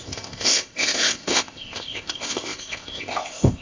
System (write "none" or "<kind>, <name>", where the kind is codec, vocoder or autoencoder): codec, ZipCodec